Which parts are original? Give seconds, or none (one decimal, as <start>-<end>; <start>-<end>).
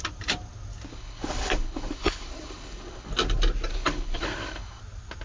0.0-0.9; 3.1-3.7; 4.8-5.2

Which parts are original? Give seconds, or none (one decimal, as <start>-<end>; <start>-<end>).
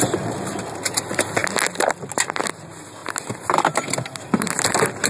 0.0-5.1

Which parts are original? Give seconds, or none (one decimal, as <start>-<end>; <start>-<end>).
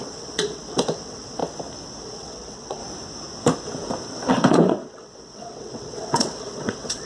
1.4-2.0; 2.8-4.3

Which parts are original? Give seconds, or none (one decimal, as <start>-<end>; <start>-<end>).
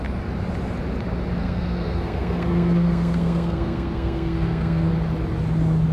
0.0-1.4; 4.9-5.9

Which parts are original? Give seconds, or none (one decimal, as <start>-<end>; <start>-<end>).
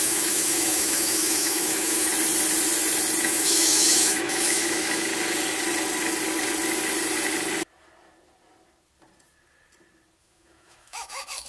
2.1-3.2; 5.1-10.2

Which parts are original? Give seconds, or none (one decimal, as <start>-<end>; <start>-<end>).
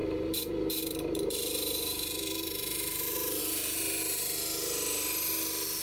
3.4-5.8